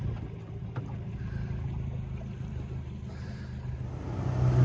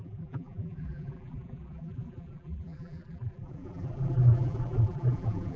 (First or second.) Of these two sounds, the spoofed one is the second